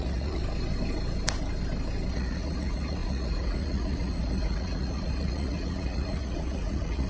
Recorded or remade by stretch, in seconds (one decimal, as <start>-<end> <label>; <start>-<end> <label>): 0.0-0.4 remade; 0.4-2.1 recorded; 2.1-7.1 remade